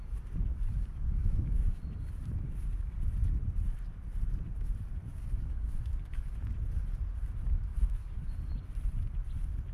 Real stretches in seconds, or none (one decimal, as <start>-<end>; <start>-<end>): 0.0-0.5; 1.8-5.1; 6.4-7.7; 8.3-9.7